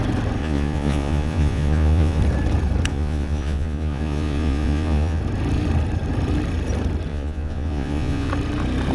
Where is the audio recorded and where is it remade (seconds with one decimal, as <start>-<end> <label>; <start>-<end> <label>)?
0.0-0.4 recorded; 0.4-2.2 remade; 2.2-2.9 recorded; 2.9-5.2 remade; 5.2-7.1 recorded; 7.1-8.3 remade; 8.3-8.9 recorded